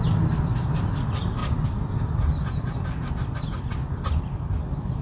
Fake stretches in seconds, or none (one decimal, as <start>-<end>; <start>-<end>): none